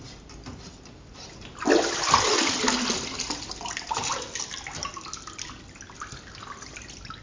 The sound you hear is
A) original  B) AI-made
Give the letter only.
A